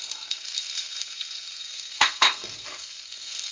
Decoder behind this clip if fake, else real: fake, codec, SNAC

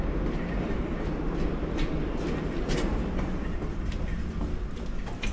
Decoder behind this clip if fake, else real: real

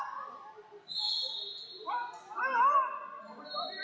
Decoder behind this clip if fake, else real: real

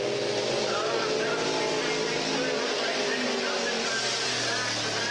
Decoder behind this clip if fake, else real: real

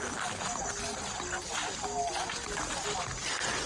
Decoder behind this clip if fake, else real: real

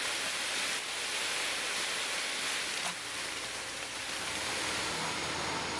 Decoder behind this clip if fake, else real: real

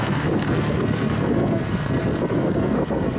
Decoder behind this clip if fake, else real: fake, codec, SNAC